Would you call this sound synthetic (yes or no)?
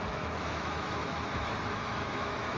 yes